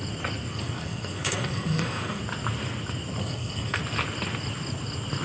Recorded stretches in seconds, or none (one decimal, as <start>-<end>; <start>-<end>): 0.0-0.5; 2.2-3.2; 3.8-5.2